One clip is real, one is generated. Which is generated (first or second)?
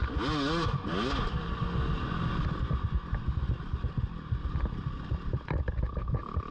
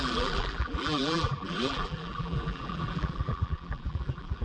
second